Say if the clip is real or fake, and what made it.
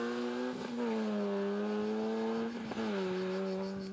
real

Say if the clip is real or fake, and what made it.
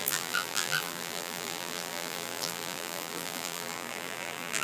fake, vocoder, BigVGAN v2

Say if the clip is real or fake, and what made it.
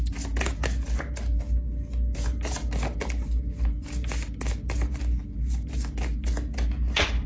real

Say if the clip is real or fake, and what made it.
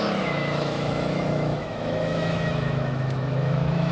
fake, autoencoder, DAC-VAE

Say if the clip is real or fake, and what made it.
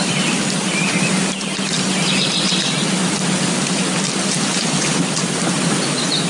fake, vocoder, BigVGAN v2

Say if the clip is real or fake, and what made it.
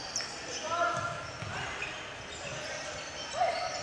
real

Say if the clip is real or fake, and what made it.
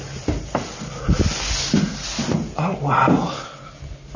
real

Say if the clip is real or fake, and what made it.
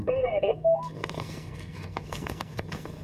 fake, codec, SNAC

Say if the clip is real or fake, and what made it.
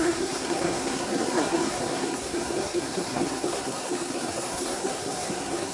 fake, codec, SNAC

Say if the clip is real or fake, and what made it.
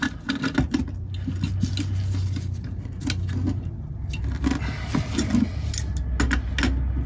real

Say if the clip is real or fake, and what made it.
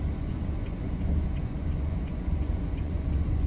fake, vocoder, Vocos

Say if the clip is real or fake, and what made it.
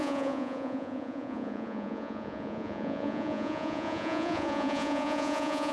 fake, vocoder, Vocos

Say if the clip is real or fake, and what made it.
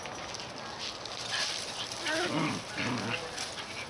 real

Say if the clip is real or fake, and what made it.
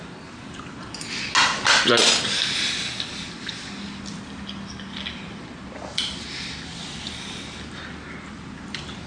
real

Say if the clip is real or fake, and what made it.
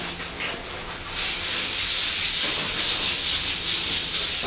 real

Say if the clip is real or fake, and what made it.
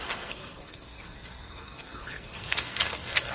fake, codec, SNAC